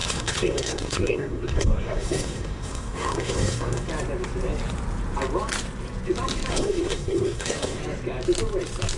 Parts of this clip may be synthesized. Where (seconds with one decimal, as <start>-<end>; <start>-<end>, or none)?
0.0-3.9; 6.5-7.8